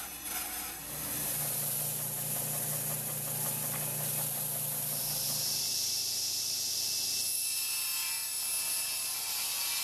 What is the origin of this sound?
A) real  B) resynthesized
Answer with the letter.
A